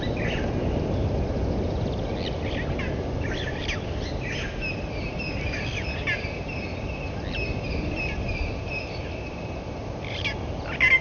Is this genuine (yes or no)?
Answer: yes